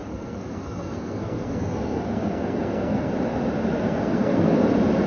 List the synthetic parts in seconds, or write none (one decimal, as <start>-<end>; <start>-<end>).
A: 0.0-3.1; 3.7-4.6